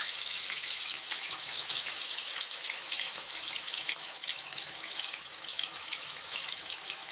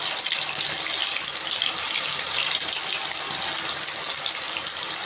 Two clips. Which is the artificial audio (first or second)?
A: first